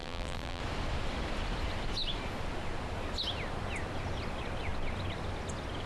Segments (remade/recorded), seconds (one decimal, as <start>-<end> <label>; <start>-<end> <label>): 0.0-0.6 remade; 0.6-5.9 recorded